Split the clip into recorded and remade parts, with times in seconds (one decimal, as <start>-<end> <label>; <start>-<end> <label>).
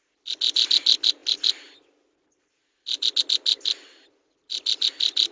0.0-5.3 recorded